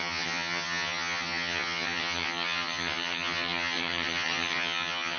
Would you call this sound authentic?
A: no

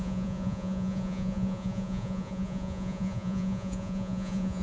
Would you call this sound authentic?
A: no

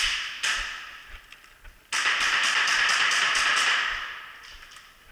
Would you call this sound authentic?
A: yes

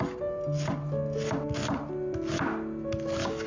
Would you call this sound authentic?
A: yes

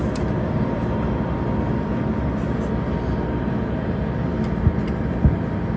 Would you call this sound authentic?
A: yes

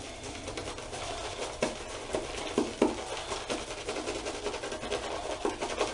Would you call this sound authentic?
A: yes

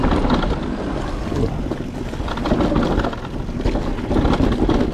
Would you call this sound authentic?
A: yes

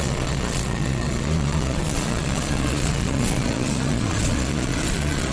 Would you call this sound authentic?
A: no